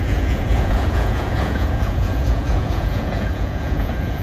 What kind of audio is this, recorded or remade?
remade